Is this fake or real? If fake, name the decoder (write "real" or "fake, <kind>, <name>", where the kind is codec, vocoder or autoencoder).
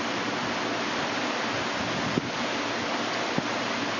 real